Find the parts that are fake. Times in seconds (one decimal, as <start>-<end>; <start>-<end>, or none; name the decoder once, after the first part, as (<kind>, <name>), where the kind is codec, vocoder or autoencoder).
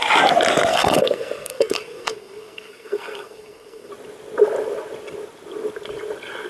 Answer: 0.7-3.9 (codec, SNAC)